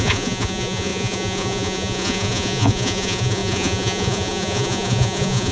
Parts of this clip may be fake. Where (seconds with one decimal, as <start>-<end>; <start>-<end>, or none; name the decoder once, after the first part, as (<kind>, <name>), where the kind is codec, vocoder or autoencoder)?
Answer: 0.0-5.5 (vocoder, Vocos)